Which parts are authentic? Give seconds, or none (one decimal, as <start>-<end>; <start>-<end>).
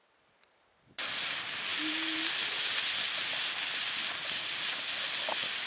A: 0.0-5.7